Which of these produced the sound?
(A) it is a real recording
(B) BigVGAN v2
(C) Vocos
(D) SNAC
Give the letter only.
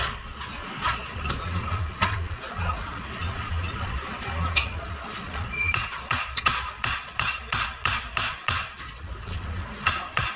C